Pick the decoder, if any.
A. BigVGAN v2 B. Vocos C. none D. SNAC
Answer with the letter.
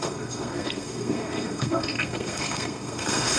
D